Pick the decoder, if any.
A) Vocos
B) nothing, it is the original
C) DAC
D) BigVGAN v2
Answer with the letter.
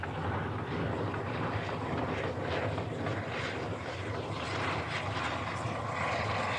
B